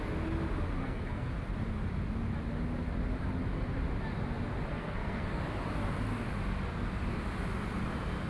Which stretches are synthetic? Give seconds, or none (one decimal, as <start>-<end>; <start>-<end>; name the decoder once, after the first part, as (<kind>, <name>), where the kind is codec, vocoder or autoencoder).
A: 0.8-1.3 (codec, SNAC); 4.7-5.4